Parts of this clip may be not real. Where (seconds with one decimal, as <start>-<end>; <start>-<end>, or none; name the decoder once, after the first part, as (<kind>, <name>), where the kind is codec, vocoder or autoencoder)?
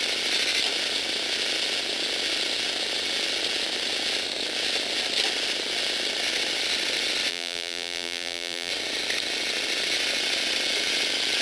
7.3-8.7 (vocoder, BigVGAN v2)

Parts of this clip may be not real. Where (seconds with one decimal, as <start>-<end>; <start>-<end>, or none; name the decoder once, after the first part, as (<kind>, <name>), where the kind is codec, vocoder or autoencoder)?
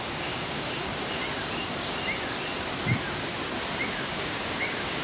0.0-1.2 (codec, DAC); 4.1-5.0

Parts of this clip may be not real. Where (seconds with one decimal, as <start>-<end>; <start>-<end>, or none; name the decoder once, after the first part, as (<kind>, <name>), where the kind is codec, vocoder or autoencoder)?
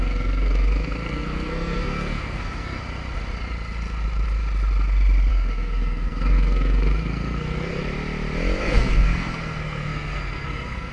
0.0-2.8 (codec, SNAC); 5.3-7.8; 8.6-10.9